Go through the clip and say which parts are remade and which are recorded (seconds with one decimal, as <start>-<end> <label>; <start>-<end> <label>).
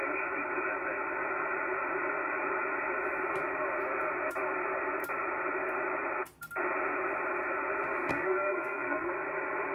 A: 0.0-8.1 recorded; 8.1-9.1 remade; 9.1-9.7 recorded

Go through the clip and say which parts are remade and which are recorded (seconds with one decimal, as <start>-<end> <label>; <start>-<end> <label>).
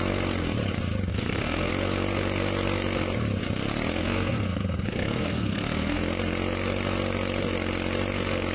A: 0.0-1.1 recorded; 1.1-1.7 remade; 1.7-4.0 recorded; 4.0-6.0 remade; 6.0-8.5 recorded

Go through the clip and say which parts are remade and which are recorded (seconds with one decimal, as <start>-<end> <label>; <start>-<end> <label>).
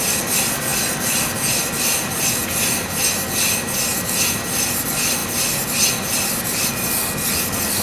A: 0.0-7.8 recorded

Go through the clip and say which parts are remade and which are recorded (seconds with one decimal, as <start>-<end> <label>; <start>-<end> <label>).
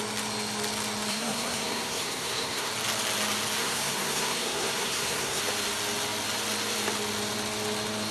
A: 0.0-1.1 recorded; 1.1-2.7 remade; 2.7-3.6 recorded; 3.6-5.4 remade; 5.4-8.1 recorded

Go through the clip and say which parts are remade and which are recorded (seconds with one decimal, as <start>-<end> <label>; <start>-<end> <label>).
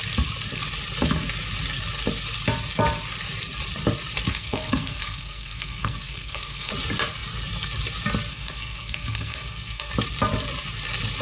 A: 0.0-4.3 recorded; 4.3-6.7 remade; 6.7-8.3 recorded; 8.3-9.9 remade; 9.9-11.2 recorded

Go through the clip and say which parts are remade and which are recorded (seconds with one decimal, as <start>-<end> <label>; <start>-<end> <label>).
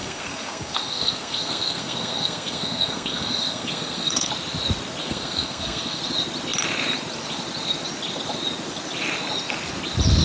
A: 0.0-4.3 remade; 4.3-5.0 recorded; 5.0-6.0 remade; 6.0-10.2 recorded